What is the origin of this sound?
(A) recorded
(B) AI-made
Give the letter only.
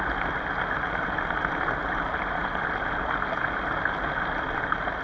A